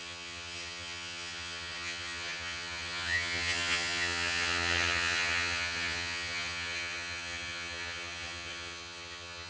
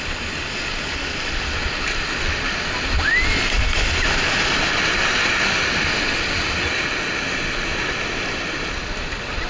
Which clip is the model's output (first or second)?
first